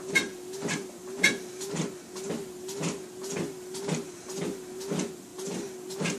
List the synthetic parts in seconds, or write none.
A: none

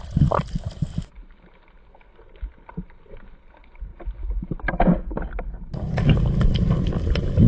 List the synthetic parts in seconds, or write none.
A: none

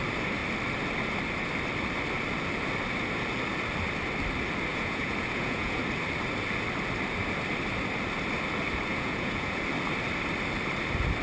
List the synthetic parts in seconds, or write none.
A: 4.7-5.8 (vocoder, Vocos); 8.9-9.6

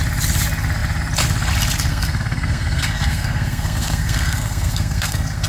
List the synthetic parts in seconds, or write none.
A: 1.9-5.5 (codec, SNAC)